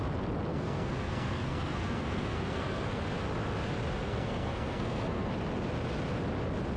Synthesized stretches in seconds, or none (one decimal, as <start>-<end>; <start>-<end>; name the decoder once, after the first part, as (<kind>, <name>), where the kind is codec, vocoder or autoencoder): 0.5-3.0 (codec, SNAC); 4.0-5.3